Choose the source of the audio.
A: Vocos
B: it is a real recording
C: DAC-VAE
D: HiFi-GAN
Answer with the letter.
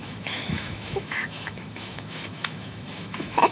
C